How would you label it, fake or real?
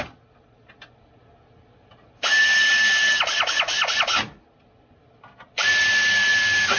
real